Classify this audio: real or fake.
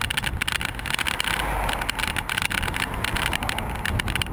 real